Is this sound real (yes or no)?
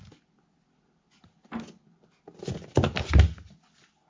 yes